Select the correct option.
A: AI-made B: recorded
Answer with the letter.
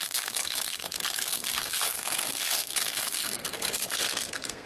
A